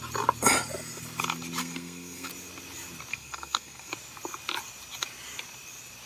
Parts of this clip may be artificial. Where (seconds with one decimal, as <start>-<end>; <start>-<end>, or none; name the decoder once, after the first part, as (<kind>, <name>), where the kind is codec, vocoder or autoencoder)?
1.6-2.3 (codec, SNAC); 3.1-3.9